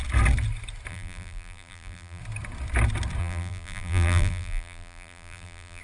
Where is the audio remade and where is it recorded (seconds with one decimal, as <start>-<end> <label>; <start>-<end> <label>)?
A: 0.0-0.9 recorded; 0.9-2.2 remade; 2.2-3.2 recorded; 3.2-5.8 remade